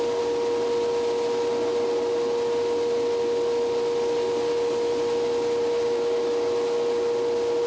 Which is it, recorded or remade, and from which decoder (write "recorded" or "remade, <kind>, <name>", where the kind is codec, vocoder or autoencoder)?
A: recorded